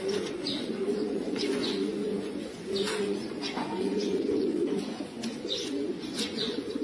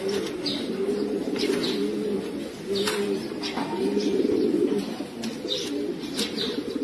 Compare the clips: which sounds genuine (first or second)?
second